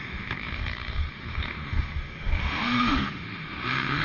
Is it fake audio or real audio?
fake